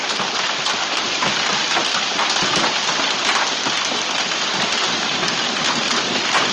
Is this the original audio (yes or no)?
yes